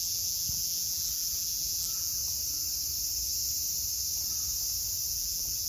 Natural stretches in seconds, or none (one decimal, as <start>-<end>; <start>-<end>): 2.2-5.1